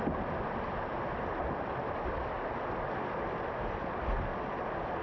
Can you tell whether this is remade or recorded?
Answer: recorded